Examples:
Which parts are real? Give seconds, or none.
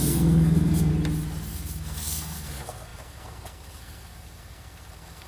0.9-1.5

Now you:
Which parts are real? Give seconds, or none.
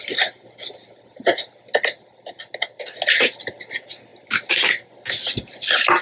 0.0-6.0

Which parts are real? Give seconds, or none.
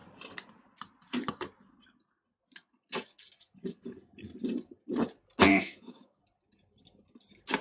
0.0-5.5; 6.2-7.6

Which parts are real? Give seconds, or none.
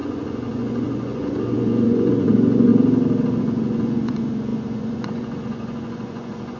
2.7-3.4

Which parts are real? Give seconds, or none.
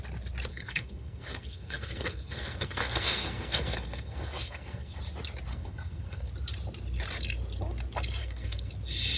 0.0-0.5; 5.0-5.5; 6.3-8.2; 8.7-9.2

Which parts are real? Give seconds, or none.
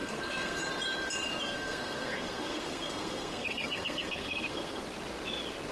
0.6-1.4; 4.8-5.7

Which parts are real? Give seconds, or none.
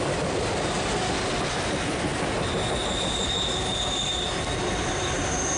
0.0-5.6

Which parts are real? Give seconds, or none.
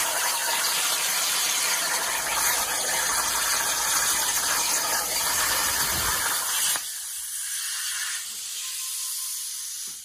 0.0-0.4; 3.4-10.0